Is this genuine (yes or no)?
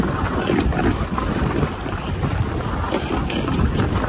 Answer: yes